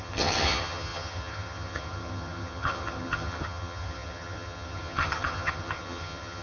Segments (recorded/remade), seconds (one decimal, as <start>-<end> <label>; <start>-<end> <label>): 0.0-6.4 remade